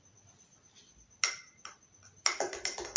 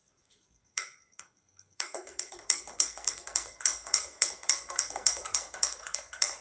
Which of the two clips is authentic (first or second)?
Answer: first